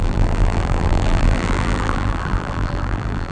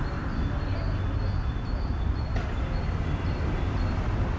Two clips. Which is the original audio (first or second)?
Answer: second